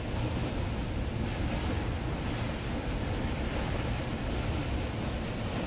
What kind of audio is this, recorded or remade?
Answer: recorded